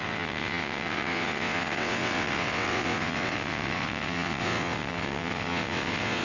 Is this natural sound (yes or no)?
no